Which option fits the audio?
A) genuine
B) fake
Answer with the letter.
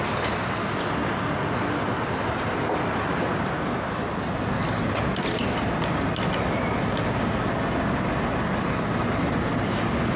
A